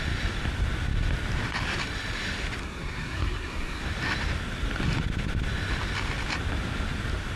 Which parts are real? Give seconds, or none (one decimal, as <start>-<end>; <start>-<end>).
0.0-2.6; 3.8-7.4